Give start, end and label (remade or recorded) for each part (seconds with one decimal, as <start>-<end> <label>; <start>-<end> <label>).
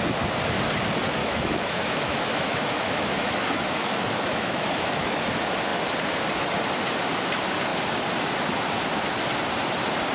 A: 0.0-1.2 recorded; 1.2-5.2 remade; 5.2-10.1 recorded